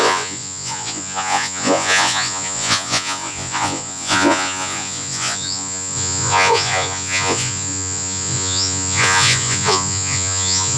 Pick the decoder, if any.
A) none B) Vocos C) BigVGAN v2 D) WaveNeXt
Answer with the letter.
B